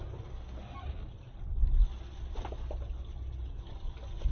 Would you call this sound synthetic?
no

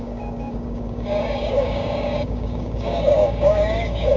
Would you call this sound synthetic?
yes